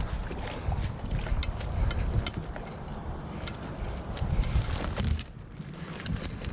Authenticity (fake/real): real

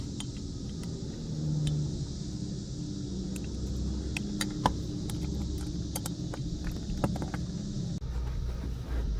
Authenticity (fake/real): real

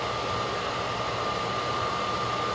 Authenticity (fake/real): real